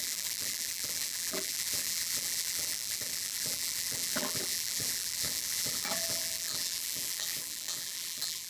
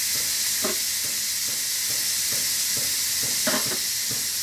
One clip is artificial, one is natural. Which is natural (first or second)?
second